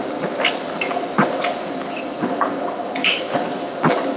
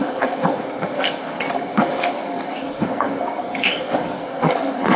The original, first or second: first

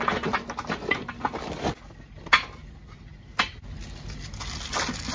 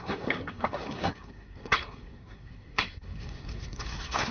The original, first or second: first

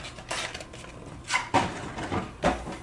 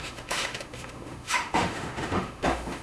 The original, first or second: first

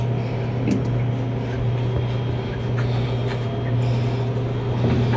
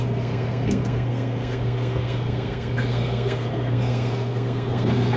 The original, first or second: first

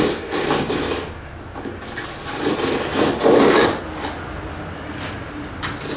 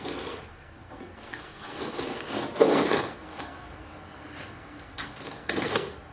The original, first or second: first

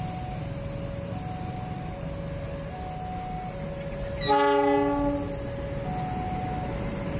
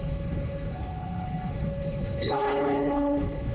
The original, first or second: first